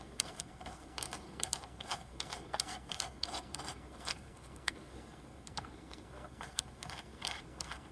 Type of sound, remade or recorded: remade